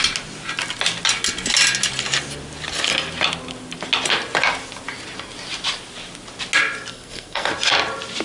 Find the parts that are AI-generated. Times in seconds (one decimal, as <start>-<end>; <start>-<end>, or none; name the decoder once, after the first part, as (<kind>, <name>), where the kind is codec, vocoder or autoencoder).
6.9-7.5 (codec, SNAC)